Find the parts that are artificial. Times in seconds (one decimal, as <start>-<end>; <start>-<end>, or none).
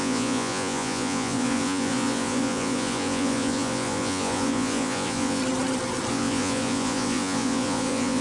0.0-5.4; 6.1-8.2